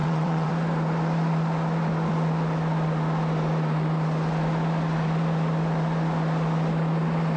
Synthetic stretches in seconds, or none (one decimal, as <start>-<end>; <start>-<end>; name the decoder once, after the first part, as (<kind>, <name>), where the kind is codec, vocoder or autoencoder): 0.0-0.5 (vocoder, WaveNeXt)